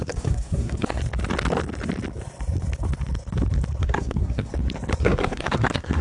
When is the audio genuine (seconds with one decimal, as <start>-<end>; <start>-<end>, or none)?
1.0-3.8; 4.5-5.0